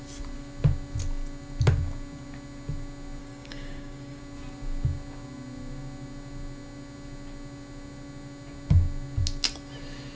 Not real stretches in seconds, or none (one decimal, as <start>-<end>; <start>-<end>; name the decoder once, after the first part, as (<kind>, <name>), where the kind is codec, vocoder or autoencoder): 3.2-4.2 (codec, DAC)